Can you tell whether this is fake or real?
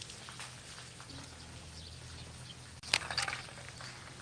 real